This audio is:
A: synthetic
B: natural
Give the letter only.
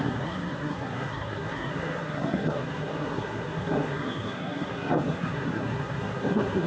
A